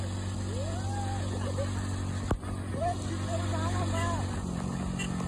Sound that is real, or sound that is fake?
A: real